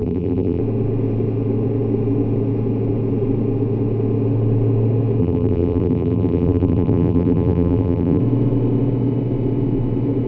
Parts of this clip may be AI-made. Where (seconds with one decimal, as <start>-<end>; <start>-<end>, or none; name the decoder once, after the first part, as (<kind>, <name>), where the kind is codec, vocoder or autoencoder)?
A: 0.0-0.6 (vocoder, BigVGAN v2); 5.2-8.2